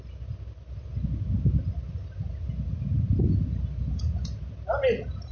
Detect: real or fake real